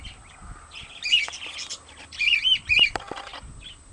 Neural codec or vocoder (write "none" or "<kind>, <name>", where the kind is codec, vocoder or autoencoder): none